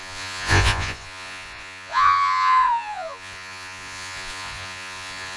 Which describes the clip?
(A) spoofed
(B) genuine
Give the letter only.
A